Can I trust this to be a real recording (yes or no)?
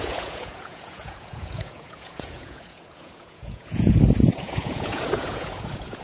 no